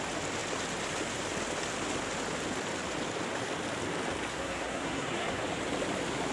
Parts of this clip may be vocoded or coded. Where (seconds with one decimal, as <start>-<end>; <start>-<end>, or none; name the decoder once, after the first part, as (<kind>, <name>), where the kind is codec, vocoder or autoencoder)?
4.3-5.4 (codec, SNAC)